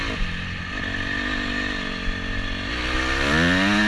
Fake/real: real